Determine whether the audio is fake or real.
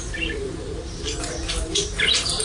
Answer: real